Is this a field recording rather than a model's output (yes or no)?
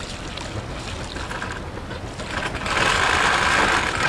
yes